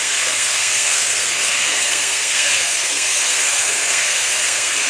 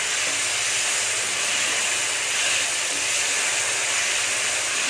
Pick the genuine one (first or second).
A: second